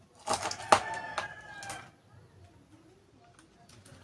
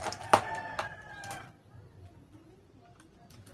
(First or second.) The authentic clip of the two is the first